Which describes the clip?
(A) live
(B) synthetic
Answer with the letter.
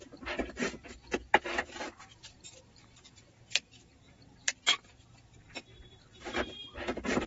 B